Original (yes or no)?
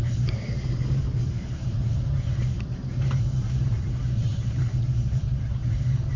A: no